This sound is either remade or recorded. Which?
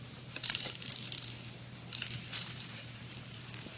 remade